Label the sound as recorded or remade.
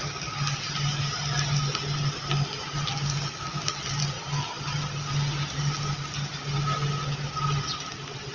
recorded